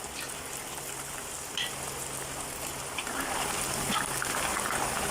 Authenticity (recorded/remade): recorded